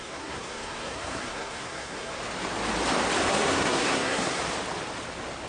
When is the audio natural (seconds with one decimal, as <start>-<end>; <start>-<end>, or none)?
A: 2.2-3.3; 4.4-5.5